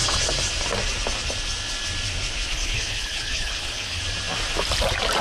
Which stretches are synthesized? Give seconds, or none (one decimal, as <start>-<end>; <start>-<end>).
2.5-4.0